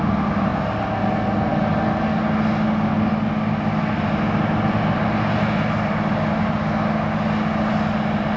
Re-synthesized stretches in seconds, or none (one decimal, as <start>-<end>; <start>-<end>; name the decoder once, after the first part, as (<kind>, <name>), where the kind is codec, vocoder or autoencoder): none

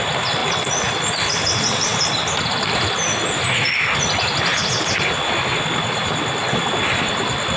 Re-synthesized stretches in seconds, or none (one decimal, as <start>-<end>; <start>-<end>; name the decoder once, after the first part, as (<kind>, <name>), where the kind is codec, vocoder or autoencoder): none

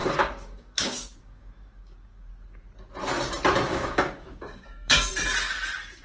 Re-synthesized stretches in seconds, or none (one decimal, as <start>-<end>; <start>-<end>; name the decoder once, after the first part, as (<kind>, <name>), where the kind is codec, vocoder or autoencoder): 0.0-2.3 (codec, DAC); 3.7-5.1

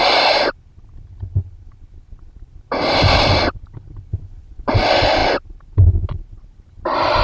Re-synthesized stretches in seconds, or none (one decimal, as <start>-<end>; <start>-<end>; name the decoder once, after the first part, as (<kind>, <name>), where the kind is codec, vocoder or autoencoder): 4.1-4.7 (vocoder, Vocos)